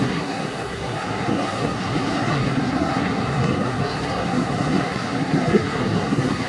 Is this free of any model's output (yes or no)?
no